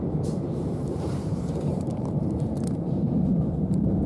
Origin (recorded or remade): remade